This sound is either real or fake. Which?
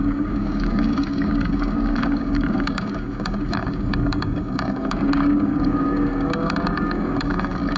fake